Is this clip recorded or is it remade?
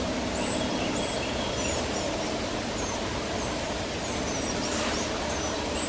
remade